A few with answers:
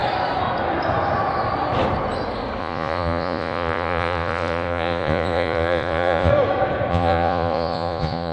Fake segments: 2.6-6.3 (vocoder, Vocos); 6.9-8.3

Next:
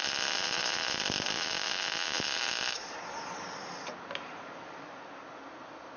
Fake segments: none

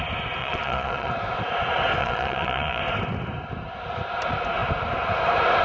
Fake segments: 0.4-1.1 (vocoder, Vocos); 2.0-2.8